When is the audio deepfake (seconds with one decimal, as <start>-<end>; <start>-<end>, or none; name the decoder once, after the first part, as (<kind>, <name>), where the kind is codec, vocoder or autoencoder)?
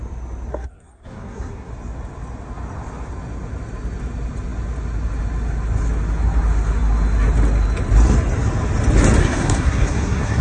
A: 0.5-1.7 (codec, SNAC); 9.2-10.4